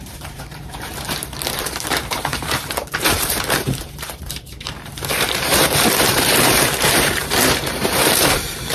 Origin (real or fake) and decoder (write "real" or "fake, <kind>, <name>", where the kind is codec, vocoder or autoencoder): fake, vocoder, BigVGAN v2